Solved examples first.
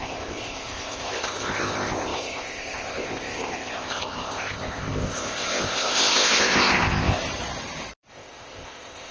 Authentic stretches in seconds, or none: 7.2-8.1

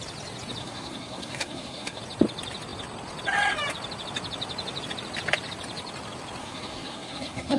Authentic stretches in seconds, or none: 0.0-0.6; 2.0-6.4

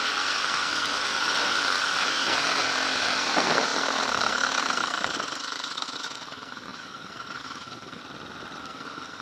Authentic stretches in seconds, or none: 8.0-8.6

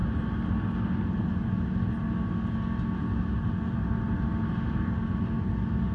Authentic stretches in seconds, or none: 0.0-5.9

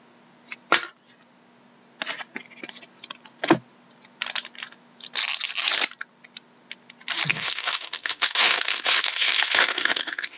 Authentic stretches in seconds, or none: 0.0-7.3

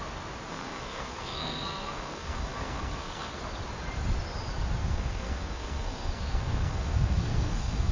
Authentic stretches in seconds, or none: 0.0-0.5; 3.4-4.8

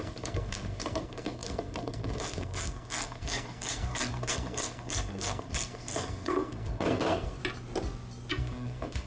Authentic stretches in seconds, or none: 7.4-8.3

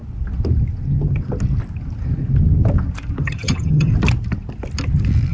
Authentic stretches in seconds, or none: 0.0-3.2; 3.9-5.3